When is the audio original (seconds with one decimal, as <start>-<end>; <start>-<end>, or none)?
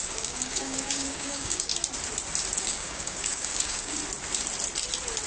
1.7-2.6; 4.0-5.3